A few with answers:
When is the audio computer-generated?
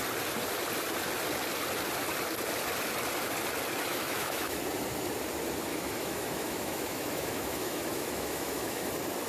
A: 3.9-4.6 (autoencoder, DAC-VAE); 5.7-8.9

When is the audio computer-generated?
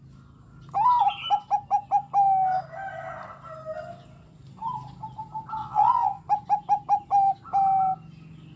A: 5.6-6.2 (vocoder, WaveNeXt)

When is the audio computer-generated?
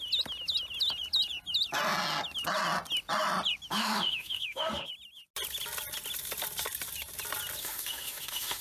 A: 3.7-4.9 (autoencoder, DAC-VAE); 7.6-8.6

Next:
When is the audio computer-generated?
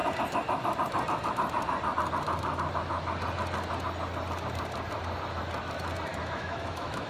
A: 6.1-7.1 (autoencoder, DAC-VAE)